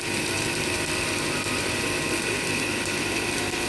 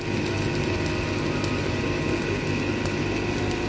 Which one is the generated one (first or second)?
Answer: first